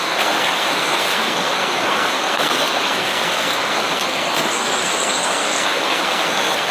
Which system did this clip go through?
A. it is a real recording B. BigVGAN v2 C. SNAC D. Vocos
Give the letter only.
C